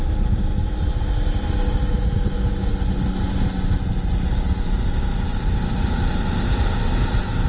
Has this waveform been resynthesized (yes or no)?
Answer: no